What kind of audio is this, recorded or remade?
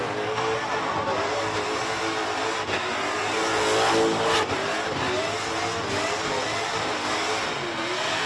recorded